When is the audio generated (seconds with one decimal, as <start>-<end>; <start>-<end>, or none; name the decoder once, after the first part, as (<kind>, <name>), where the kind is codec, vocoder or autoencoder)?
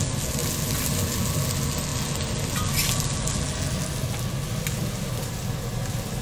none